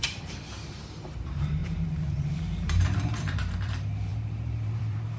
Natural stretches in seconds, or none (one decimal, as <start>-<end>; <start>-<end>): none